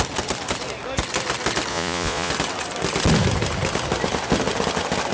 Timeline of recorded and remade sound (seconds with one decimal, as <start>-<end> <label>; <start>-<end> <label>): 0.0-1.7 recorded; 1.7-2.3 remade; 2.3-5.1 recorded